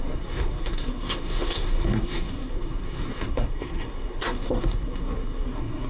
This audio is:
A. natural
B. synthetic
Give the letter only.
B